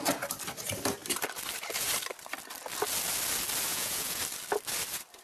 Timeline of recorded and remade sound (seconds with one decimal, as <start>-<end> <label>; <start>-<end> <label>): 0.0-3.7 recorded; 3.7-4.2 remade; 4.2-5.2 recorded